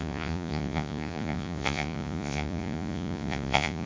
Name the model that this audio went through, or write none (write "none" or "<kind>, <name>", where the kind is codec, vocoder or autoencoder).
vocoder, Vocos